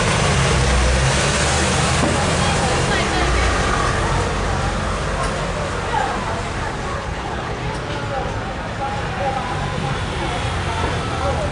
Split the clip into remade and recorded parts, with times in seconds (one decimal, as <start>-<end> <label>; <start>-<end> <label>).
0.0-6.9 recorded; 6.9-7.6 remade; 7.6-11.5 recorded